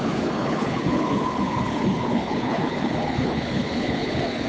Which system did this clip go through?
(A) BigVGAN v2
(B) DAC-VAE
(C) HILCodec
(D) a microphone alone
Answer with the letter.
C